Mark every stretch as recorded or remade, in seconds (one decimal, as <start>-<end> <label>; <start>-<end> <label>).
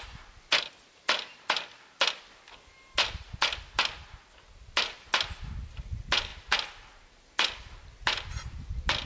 0.0-9.1 recorded